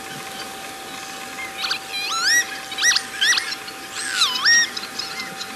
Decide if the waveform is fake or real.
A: real